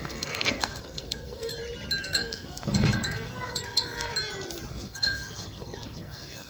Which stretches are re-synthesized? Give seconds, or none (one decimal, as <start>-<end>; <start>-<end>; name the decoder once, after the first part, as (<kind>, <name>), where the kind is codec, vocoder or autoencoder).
0.0-1.5 (codec, SNAC); 2.0-4.1; 4.7-6.5